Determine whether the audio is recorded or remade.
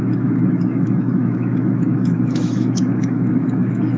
remade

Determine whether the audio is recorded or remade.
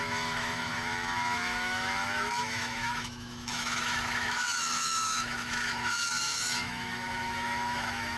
remade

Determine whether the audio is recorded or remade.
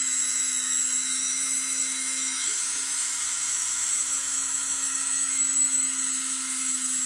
remade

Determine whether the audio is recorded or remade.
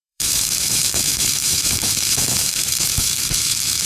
remade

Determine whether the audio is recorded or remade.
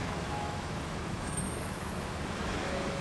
remade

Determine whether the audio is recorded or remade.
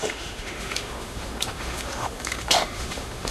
remade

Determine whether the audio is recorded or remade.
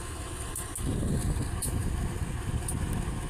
recorded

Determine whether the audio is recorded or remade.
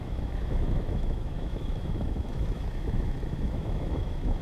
remade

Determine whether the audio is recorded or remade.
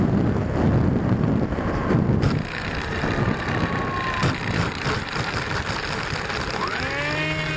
recorded